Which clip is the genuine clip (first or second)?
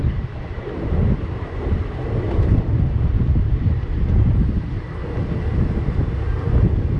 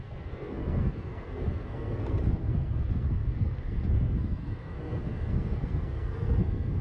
first